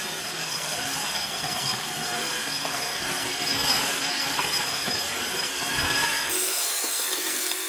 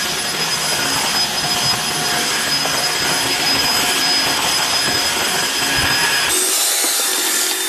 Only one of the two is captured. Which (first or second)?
second